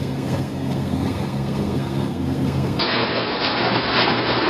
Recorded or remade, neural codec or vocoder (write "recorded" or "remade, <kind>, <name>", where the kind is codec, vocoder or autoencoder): remade, codec, SNAC